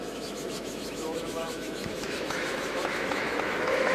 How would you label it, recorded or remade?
remade